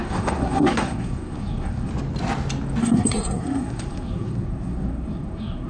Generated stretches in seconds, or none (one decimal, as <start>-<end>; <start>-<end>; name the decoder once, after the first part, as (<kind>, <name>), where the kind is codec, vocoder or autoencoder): 0.0-1.9 (codec, SNAC); 2.8-5.7